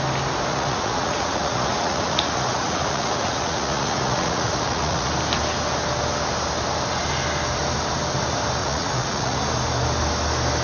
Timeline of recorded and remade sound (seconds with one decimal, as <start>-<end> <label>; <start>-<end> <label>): 0.0-0.5 recorded; 0.5-5.1 remade; 5.1-8.6 recorded; 8.6-9.4 remade; 9.4-10.6 recorded